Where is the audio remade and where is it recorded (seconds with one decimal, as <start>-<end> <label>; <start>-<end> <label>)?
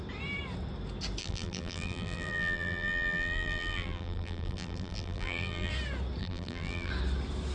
0.0-1.2 recorded; 1.2-5.7 remade; 5.7-6.2 recorded; 6.2-6.9 remade; 6.9-7.5 recorded